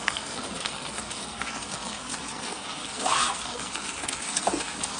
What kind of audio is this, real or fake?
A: fake